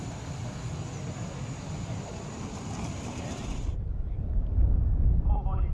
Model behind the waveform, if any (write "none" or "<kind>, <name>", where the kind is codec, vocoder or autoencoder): none